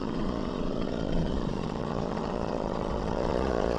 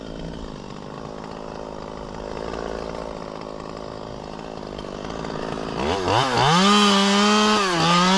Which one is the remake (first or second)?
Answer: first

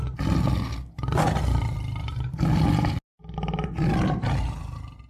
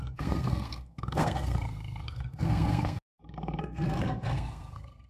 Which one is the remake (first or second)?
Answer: second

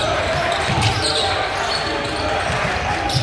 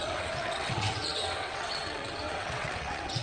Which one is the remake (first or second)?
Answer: second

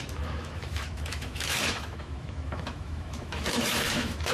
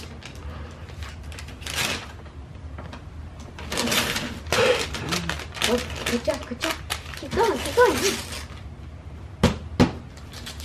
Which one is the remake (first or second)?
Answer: first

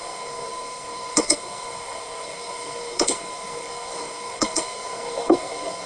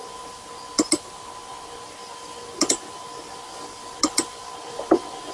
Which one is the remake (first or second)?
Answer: first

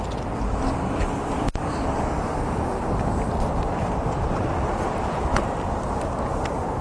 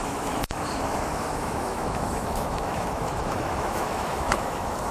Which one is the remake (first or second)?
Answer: second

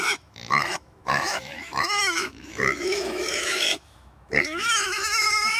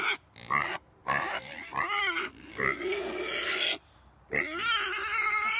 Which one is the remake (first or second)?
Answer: first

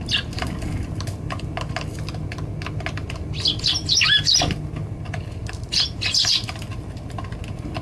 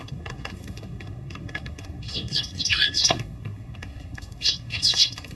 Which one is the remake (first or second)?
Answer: second